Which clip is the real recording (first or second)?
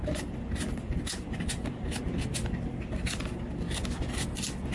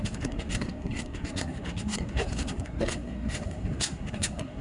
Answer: first